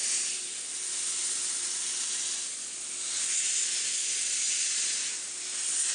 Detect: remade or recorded recorded